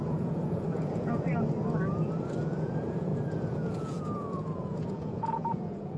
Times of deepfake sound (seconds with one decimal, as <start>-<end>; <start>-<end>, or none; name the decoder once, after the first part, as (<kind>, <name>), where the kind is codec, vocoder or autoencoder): 0.0-1.3 (vocoder, Vocos); 2.4-6.0